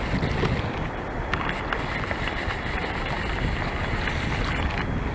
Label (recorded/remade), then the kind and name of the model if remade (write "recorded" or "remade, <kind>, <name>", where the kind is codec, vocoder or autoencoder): recorded